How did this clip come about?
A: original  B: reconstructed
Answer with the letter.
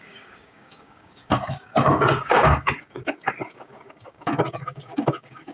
B